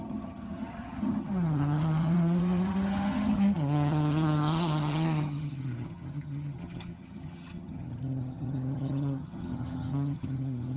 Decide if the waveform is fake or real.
fake